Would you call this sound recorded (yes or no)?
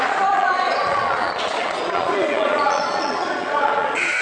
no